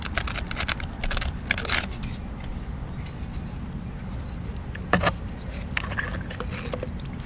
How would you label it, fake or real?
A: real